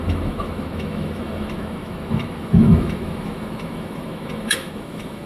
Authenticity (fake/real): fake